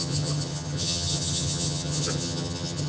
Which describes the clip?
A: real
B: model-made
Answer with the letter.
B